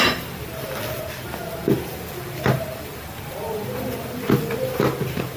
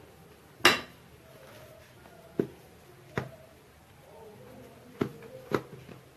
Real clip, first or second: second